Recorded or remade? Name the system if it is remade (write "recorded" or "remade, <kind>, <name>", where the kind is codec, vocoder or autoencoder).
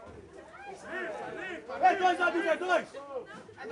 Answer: recorded